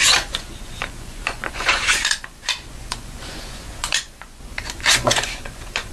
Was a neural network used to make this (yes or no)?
yes